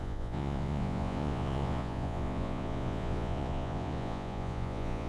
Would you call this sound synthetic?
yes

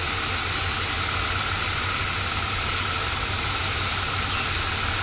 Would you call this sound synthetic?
no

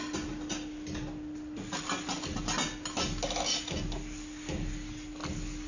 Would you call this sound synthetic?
no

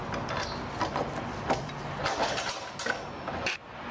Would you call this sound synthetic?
no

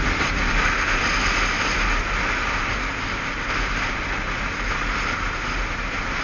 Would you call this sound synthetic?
no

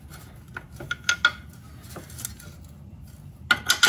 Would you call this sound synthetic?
no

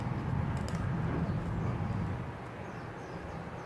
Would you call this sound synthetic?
no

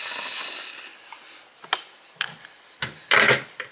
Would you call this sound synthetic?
no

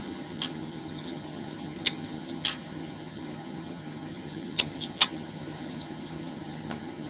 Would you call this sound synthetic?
yes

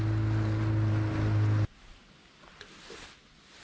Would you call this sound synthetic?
no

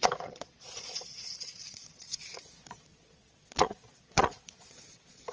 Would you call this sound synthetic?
yes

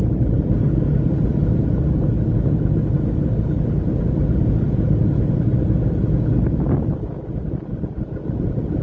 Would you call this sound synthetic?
no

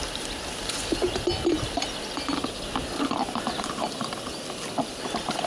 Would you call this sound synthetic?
no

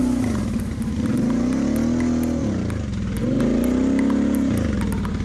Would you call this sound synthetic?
no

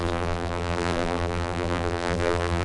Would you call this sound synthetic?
yes